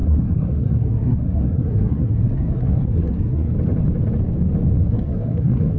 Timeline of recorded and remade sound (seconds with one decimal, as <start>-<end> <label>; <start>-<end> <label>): 0.0-3.5 remade; 3.5-4.8 recorded; 4.8-5.8 remade